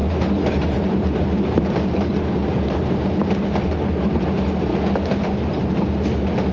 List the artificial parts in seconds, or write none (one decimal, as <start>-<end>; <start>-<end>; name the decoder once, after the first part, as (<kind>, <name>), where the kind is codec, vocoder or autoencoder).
none